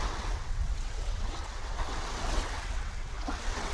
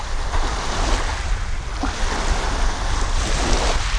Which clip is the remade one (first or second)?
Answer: first